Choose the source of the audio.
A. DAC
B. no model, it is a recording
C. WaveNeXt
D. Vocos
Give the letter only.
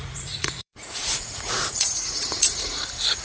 D